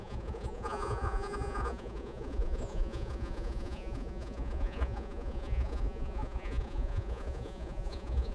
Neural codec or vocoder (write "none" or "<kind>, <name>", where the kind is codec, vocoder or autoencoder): vocoder, Vocos